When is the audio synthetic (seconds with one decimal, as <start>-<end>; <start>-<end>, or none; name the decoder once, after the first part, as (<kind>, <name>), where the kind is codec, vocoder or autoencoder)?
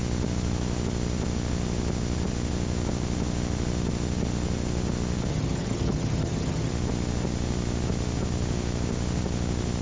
5.3-6.7 (vocoder, HiFi-GAN)